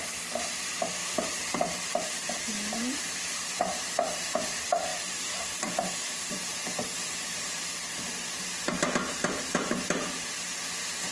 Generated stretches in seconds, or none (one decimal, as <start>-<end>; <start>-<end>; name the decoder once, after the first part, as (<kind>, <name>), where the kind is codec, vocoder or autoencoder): 0.0-11.1 (vocoder, BigVGAN v2)